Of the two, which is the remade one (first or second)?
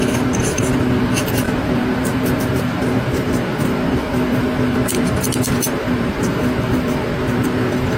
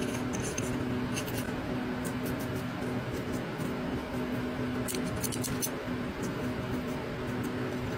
first